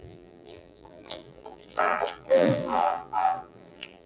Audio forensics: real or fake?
fake